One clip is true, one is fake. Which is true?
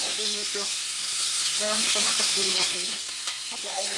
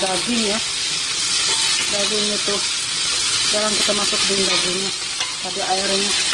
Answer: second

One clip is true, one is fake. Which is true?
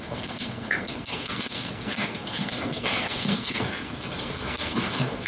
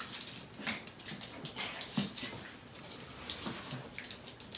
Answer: second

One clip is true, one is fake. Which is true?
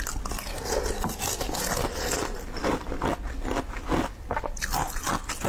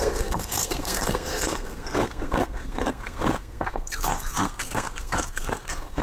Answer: first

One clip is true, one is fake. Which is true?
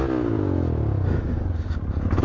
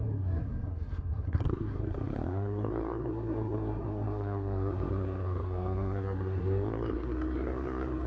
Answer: first